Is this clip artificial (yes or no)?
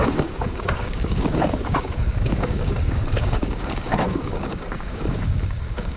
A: yes